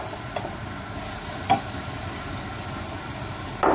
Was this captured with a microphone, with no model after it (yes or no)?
yes